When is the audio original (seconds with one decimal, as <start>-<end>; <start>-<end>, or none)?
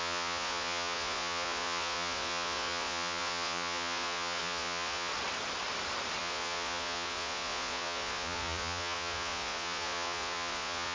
5.1-6.2